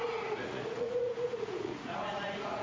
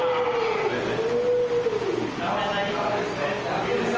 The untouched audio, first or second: second